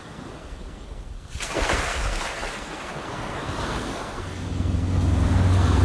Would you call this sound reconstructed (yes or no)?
yes